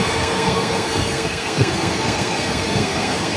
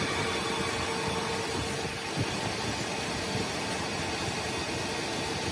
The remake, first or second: first